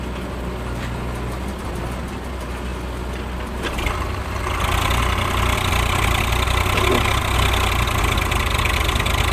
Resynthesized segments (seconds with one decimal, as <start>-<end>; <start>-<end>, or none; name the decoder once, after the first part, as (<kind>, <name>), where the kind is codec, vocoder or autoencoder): none